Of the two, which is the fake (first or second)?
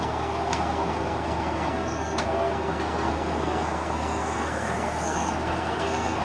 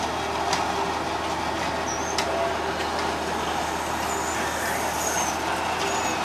first